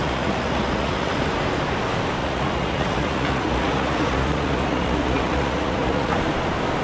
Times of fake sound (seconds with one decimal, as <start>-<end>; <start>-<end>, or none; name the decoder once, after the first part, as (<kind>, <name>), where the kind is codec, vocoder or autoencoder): 0.0-1.1 (vocoder, Vocos); 2.2-6.2